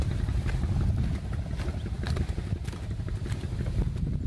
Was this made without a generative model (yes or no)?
yes